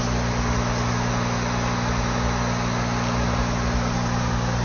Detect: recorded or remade recorded